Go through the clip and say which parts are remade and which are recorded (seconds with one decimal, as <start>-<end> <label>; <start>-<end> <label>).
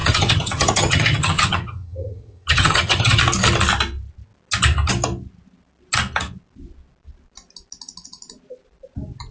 0.0-3.2 remade; 3.2-9.3 recorded